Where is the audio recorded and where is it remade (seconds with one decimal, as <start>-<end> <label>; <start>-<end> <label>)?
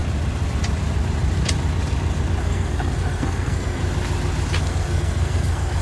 0.0-2.4 recorded; 2.4-3.8 remade; 3.8-4.6 recorded; 4.6-5.8 remade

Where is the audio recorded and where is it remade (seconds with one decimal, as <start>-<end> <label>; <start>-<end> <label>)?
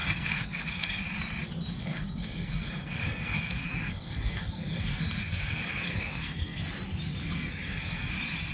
0.0-1.0 remade; 1.0-1.8 recorded; 1.8-6.6 remade; 6.6-7.2 recorded; 7.2-8.1 remade; 8.1-8.5 recorded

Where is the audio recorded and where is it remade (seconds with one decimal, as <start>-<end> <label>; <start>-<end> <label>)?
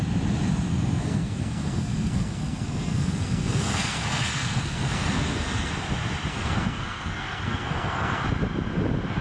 0.0-0.7 recorded; 0.7-5.7 remade; 5.7-6.3 recorded; 6.3-8.2 remade; 8.2-9.2 recorded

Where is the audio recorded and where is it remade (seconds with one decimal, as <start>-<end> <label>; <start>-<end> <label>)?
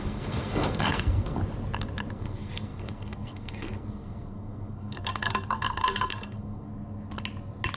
0.0-1.4 remade; 1.4-2.1 recorded; 2.1-6.7 remade; 6.7-7.8 recorded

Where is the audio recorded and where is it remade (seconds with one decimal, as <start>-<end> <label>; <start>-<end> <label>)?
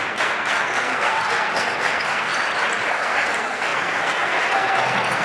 0.0-2.3 remade; 2.3-2.9 recorded; 2.9-5.2 remade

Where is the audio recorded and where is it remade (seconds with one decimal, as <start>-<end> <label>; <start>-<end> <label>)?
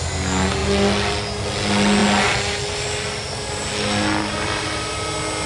0.0-5.5 recorded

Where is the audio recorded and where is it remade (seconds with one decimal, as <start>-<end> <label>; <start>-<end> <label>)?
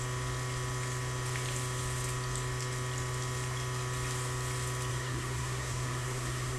0.0-4.9 recorded; 4.9-6.6 remade